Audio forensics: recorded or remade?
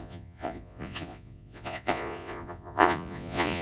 remade